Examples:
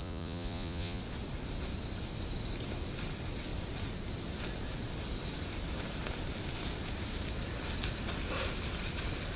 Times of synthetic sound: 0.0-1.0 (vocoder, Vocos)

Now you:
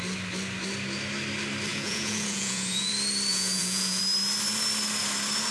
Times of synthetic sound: 1.7-2.9 (vocoder, Vocos); 3.3-4.0

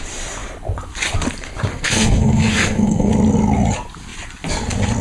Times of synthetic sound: 1.7-3.1 (codec, SNAC)